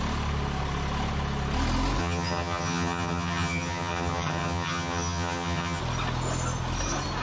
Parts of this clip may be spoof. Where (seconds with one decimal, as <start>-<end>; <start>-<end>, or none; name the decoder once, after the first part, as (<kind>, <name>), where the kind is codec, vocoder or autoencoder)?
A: 2.0-5.8 (vocoder, HiFi-GAN)